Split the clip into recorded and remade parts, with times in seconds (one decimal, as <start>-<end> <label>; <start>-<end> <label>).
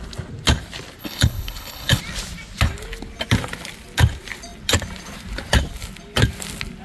0.0-1.0 recorded; 1.0-2.0 remade; 2.0-6.8 recorded